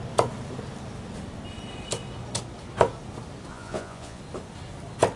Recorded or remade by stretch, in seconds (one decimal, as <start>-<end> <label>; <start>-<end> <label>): 0.0-3.5 recorded; 3.5-4.2 remade; 4.2-5.2 recorded